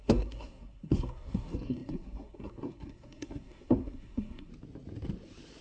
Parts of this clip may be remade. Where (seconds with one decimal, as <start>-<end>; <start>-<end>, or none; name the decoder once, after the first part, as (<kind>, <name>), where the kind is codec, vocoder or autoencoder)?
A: 0.0-4.5 (codec, SNAC)